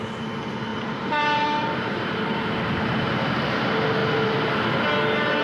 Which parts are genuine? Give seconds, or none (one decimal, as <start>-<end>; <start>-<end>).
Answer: 0.0-0.7; 3.6-5.4